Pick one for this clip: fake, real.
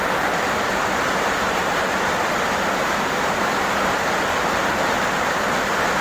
real